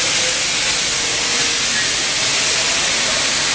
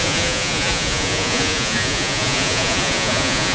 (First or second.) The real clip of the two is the first